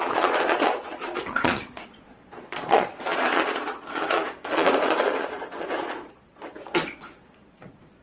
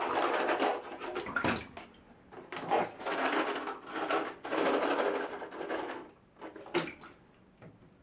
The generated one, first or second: first